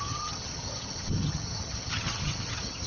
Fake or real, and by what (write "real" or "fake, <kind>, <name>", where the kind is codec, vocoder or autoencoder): fake, vocoder, HiFi-GAN